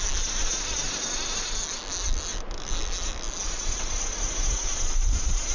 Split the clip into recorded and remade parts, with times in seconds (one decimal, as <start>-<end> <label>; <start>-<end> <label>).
0.0-5.5 recorded